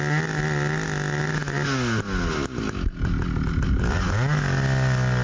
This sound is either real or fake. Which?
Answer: real